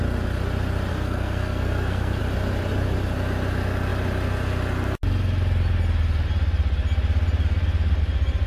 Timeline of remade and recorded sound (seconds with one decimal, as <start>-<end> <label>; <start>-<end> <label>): 0.0-0.9 recorded; 0.9-2.2 remade; 2.2-8.5 recorded